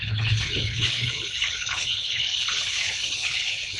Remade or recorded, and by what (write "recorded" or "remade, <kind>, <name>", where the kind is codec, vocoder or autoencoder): remade, codec, HILCodec